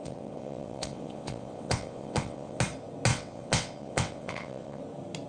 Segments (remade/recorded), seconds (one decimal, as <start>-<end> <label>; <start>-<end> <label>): 0.0-2.6 remade; 2.6-3.1 recorded; 3.1-4.8 remade; 4.8-5.3 recorded